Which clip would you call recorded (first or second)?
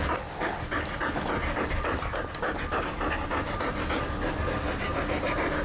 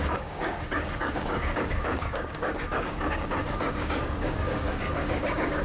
first